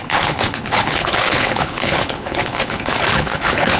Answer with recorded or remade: remade